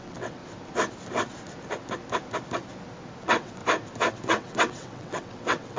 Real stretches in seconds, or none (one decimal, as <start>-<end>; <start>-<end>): 0.4-3.2; 3.6-4.1